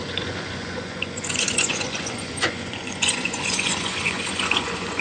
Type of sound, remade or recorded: remade